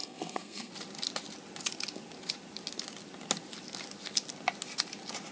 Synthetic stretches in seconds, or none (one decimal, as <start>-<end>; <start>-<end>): 0.0-0.7